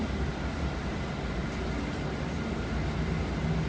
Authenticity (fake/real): real